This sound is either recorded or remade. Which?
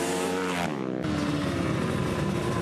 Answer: recorded